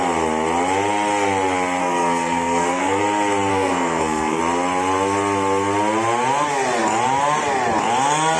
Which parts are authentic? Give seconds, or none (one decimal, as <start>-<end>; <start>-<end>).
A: 0.0-1.8; 3.0-3.5; 4.4-8.4